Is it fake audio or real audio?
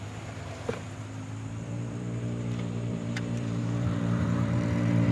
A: fake